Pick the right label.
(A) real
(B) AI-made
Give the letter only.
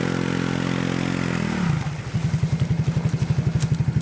A